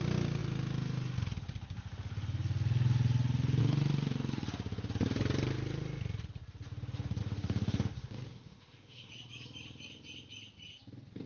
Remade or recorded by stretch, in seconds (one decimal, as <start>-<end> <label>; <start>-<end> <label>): 0.0-7.2 recorded; 7.2-9.1 remade; 9.1-11.3 recorded